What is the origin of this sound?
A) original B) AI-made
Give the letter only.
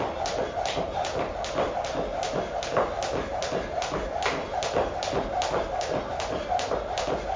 A